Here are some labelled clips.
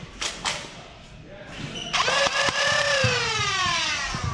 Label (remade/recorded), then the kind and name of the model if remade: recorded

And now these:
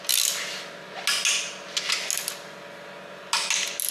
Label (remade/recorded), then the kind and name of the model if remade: recorded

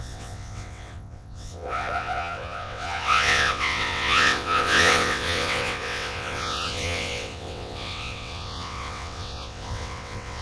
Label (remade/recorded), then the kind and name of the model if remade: remade, vocoder, WaveNeXt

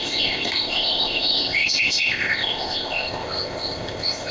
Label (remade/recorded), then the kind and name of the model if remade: remade, codec, ZipCodec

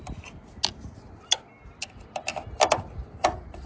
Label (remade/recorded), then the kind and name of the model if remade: recorded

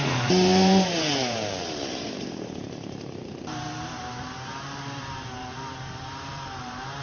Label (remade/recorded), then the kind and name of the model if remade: remade, vocoder, BigVGAN v2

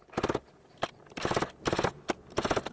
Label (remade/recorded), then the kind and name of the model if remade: recorded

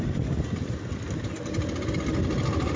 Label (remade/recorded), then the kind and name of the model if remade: recorded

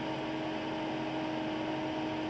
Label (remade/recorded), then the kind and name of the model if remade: recorded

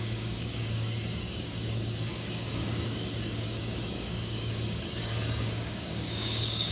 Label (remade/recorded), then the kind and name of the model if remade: remade, codec, DAC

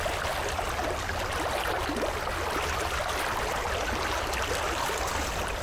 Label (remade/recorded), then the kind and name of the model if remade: recorded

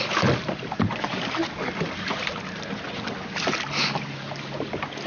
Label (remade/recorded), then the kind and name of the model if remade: recorded